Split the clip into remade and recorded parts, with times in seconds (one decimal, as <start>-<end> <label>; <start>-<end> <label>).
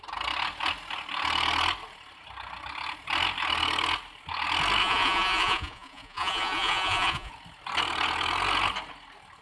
0.0-4.8 recorded; 4.8-7.3 remade; 7.3-9.4 recorded